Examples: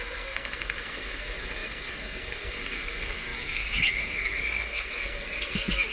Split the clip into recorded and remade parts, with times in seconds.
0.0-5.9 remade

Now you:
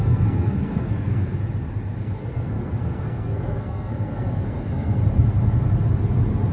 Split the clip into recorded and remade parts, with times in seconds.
0.0-1.4 remade; 1.4-2.0 recorded; 2.0-5.0 remade; 5.0-6.5 recorded

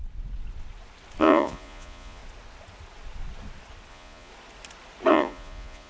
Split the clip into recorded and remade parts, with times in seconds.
0.0-1.2 recorded; 1.2-2.2 remade; 2.2-3.9 recorded; 3.9-4.3 remade; 4.3-5.1 recorded; 5.1-5.9 remade